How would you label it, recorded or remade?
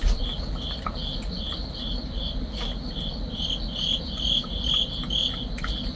recorded